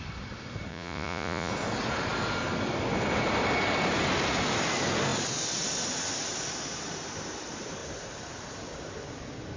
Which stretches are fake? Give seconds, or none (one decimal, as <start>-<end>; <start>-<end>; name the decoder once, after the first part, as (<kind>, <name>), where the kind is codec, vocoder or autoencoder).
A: 0.7-1.5 (vocoder, Vocos)